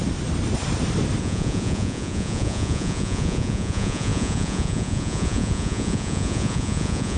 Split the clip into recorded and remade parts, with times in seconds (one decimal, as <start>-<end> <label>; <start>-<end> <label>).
0.0-1.2 recorded; 1.2-7.2 remade